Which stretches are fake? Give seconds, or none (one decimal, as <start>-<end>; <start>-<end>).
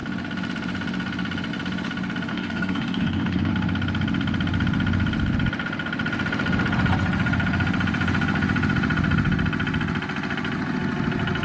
2.3-3.5